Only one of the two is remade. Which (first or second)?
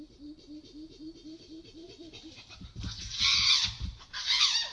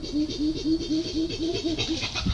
first